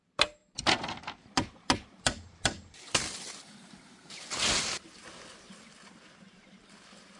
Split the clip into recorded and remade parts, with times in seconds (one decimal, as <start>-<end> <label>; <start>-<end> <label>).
0.0-7.2 recorded